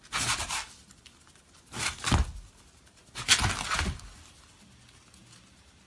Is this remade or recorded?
recorded